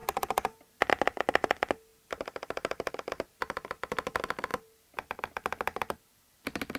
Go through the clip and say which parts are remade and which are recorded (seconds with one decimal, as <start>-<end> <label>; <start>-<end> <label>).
0.0-0.9 remade; 0.9-4.5 recorded; 4.5-6.8 remade